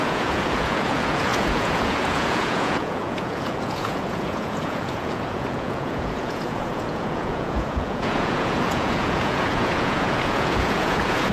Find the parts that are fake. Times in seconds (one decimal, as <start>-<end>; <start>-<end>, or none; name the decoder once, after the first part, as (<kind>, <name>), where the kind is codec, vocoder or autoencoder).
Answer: 0.0-11.3 (vocoder, Vocos)

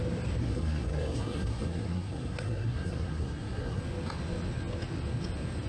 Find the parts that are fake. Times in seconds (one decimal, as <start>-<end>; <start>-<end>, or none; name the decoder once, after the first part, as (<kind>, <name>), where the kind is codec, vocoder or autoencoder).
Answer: 0.4-3.8 (codec, SNAC)

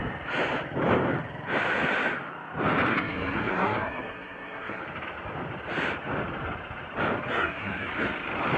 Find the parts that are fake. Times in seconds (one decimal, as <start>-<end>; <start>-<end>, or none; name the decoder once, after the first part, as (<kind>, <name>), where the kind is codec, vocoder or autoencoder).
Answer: 2.9-4.8 (codec, SNAC); 7.3-7.9

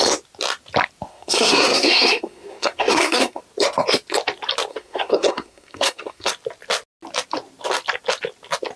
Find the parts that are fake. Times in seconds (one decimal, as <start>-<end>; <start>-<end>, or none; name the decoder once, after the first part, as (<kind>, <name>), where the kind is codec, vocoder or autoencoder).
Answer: 1.1-3.4 (codec, SNAC); 4.7-6.3